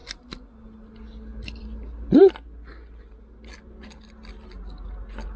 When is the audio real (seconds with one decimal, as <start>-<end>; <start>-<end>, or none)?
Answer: 0.0-5.4